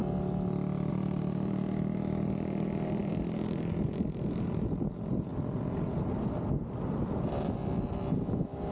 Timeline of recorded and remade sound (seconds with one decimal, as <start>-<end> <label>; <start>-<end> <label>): 0.0-0.9 recorded; 0.9-5.3 remade; 5.3-8.2 recorded; 8.2-8.7 remade